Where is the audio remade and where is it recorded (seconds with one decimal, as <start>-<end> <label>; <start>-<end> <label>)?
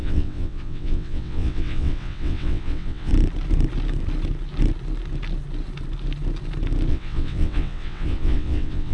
0.0-3.1 remade; 3.1-6.9 recorded; 6.9-8.9 remade